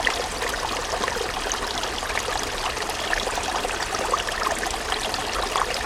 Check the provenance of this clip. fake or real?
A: real